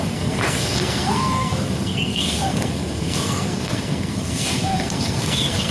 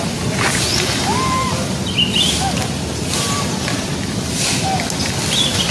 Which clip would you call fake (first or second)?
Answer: first